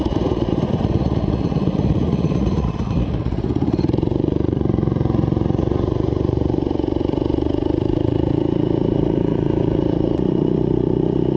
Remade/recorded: remade